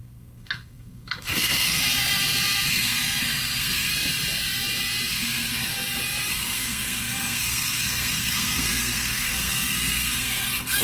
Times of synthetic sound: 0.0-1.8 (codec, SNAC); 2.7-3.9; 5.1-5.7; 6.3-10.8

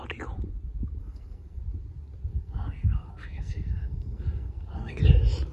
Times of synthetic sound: 1.0-1.6 (codec, SNAC); 2.3-5.0